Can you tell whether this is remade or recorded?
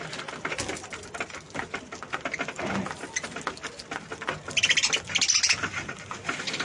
recorded